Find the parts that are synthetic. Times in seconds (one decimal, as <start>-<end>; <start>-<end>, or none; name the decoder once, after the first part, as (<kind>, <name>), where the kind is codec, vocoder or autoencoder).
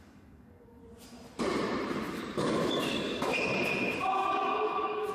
0.0-0.8 (codec, DAC); 2.1-3.3; 4.1-5.1